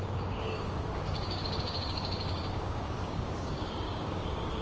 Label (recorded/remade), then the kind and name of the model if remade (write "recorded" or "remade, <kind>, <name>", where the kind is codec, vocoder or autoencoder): remade, codec, DAC